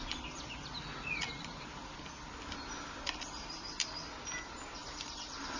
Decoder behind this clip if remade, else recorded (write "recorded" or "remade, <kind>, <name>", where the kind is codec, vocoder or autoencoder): recorded